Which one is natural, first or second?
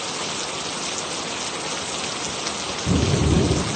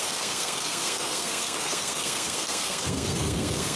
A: first